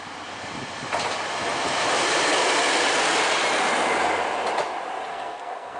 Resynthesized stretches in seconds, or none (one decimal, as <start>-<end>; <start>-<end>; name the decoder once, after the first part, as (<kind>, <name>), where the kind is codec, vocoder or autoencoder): 5.1-5.8 (codec, SNAC)